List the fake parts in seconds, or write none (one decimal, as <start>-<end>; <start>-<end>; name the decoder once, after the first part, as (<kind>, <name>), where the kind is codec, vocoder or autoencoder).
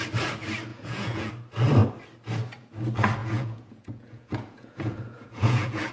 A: 0.7-1.3 (vocoder, Vocos); 3.2-5.9